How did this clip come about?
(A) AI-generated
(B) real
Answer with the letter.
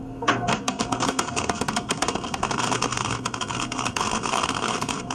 A